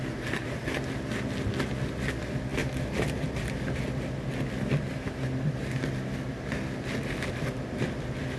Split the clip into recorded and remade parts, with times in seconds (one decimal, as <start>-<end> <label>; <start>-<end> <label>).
0.0-8.4 recorded